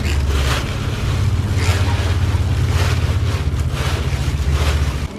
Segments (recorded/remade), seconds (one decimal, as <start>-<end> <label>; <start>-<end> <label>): 0.0-5.2 recorded